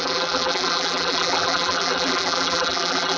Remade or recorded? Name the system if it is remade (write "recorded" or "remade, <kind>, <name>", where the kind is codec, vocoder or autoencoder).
remade, vocoder, BigVGAN v2